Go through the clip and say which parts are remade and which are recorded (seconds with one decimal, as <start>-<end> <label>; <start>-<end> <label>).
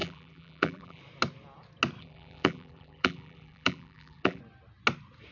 0.0-1.0 remade; 1.0-2.0 recorded; 2.0-4.4 remade; 4.4-5.3 recorded